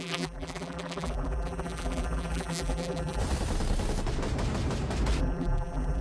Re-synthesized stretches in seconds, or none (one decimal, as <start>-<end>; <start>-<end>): 0.0-3.2; 5.2-6.0